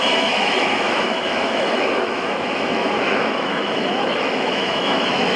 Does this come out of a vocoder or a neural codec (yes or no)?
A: yes